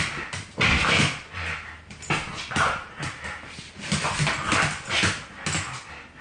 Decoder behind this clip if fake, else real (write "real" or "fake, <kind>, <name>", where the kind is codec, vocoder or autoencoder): real